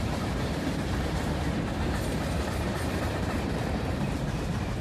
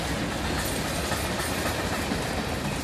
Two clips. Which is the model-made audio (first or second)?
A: first